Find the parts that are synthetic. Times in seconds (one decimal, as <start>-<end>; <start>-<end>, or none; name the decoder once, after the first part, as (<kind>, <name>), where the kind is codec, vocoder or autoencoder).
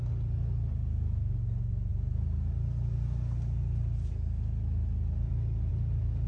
none